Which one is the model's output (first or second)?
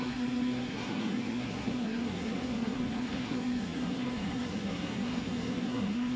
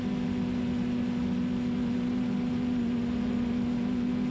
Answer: first